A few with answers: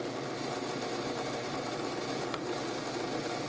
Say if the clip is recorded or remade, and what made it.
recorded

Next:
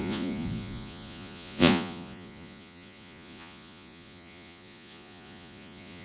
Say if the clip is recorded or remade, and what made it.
remade, vocoder, Vocos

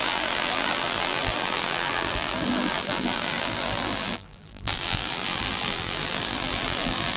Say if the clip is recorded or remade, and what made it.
remade, vocoder, BigVGAN v2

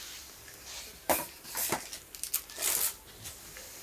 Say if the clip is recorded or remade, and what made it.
recorded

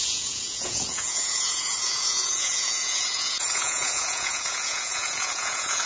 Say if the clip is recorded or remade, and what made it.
remade, vocoder, Vocos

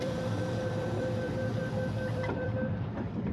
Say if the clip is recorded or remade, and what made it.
remade, vocoder, BigVGAN v2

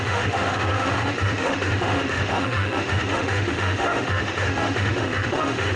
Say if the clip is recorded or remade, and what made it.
remade, autoencoder, DAC-VAE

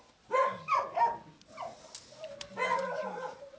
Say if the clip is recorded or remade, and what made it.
recorded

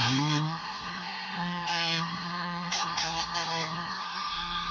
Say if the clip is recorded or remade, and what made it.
remade, codec, SNAC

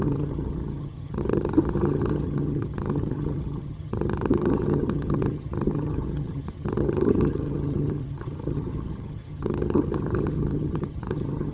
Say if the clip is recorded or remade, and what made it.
remade, vocoder, HiFi-GAN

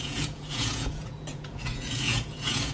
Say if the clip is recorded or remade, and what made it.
remade, vocoder, Vocos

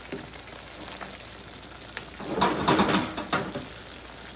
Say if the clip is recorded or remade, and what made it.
recorded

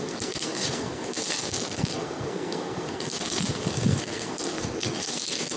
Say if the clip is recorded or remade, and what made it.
remade, codec, SNAC